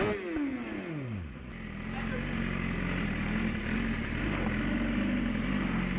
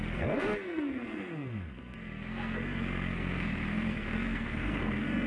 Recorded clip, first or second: first